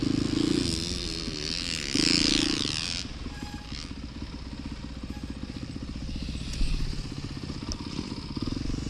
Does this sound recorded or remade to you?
recorded